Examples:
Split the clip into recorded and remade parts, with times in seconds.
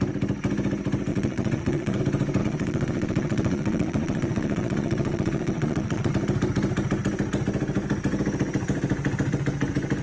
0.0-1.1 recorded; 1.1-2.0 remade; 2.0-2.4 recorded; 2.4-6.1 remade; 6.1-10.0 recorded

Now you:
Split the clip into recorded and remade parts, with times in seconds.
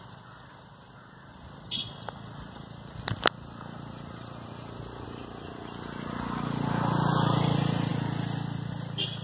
0.0-9.2 recorded